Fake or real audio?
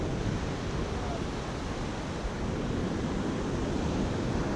real